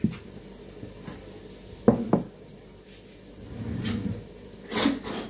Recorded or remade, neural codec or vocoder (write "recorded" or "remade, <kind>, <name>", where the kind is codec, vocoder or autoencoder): recorded